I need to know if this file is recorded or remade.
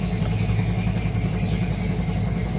recorded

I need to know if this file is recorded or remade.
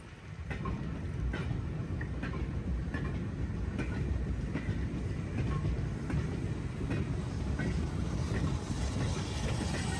recorded